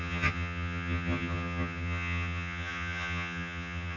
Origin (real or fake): fake